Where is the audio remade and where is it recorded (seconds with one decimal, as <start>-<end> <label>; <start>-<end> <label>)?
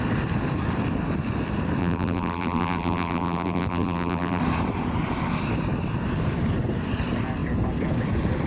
0.0-1.8 recorded; 1.8-4.4 remade; 4.4-8.5 recorded